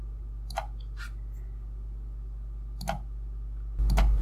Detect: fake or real real